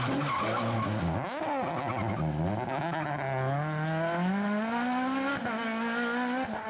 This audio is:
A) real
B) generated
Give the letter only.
A